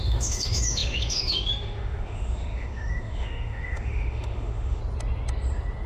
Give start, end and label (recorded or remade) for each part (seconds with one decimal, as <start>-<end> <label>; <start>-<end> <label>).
0.0-4.8 remade; 4.8-5.9 recorded